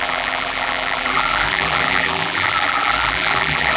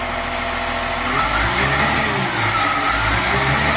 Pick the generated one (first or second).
first